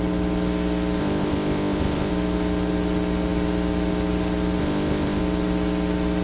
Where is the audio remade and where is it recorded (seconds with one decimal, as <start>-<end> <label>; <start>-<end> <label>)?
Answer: 0.0-1.0 recorded; 1.0-2.1 remade; 2.1-4.6 recorded; 4.6-5.2 remade; 5.2-6.2 recorded